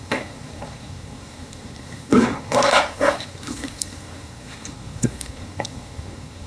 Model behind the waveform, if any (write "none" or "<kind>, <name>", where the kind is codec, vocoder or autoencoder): codec, SNAC